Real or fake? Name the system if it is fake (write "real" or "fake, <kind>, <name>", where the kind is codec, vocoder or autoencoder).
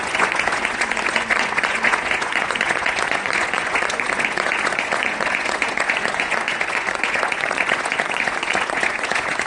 fake, vocoder, Vocos